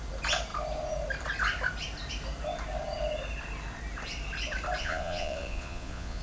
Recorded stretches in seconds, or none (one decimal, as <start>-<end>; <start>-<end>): 0.0-4.8